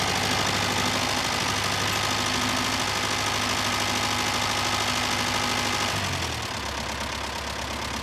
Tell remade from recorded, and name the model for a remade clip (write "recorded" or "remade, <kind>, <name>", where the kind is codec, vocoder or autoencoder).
recorded